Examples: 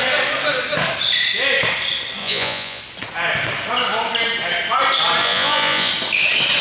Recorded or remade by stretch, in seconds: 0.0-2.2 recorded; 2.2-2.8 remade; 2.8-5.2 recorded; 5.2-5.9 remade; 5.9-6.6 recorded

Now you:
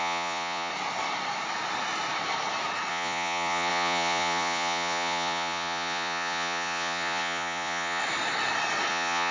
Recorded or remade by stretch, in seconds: 0.0-0.7 remade; 0.7-2.9 recorded; 2.9-8.0 remade; 8.0-8.9 recorded; 8.9-9.3 remade

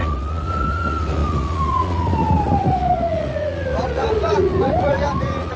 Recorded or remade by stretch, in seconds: 0.0-5.6 remade